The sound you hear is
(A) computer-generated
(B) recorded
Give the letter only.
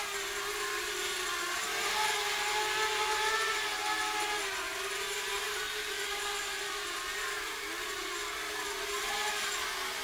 B